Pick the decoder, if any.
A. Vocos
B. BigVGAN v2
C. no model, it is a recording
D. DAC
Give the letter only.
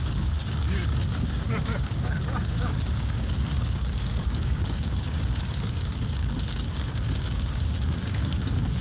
D